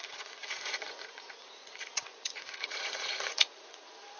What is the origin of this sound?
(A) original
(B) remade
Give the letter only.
B